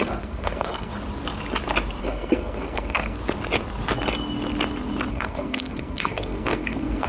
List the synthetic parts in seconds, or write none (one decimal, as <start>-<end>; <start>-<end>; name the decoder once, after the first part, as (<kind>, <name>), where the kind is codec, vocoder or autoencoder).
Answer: 0.0-0.9 (codec, SNAC); 2.0-3.2; 5.1-7.1